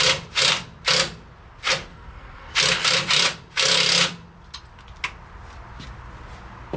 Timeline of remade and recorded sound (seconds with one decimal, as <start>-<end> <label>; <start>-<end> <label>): 0.0-1.9 recorded; 1.9-2.5 remade; 2.5-6.8 recorded